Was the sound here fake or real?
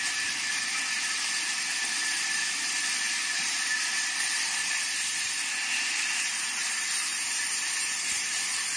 fake